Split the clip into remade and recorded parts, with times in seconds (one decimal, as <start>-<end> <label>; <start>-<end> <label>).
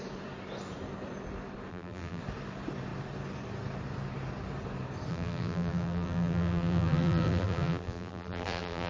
0.0-1.7 recorded; 1.7-2.2 remade; 2.2-5.1 recorded; 5.1-8.9 remade